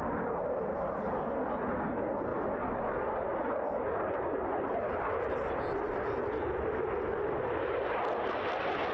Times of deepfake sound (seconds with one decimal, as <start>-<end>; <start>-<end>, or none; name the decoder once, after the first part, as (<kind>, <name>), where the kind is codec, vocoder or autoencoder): none